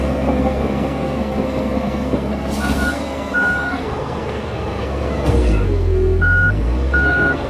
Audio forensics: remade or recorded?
remade